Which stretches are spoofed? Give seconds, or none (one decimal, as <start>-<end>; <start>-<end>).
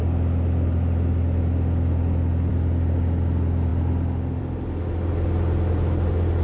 none